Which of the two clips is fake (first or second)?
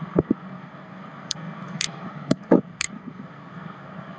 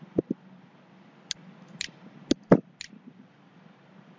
first